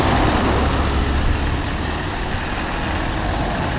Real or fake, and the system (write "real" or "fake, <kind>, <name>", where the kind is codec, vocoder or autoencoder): real